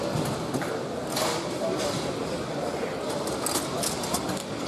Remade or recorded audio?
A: recorded